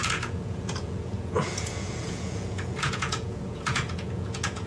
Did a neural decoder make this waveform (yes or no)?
yes